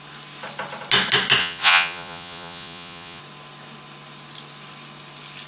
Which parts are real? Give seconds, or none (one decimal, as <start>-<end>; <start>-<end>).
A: 0.0-1.4; 3.2-5.5